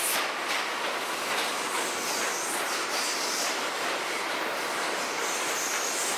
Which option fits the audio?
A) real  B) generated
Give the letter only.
A